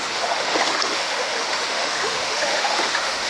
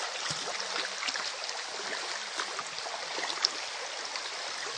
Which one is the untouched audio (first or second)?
second